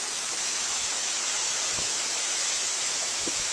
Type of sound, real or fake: fake